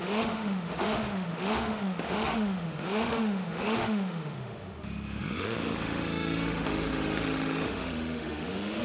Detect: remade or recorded remade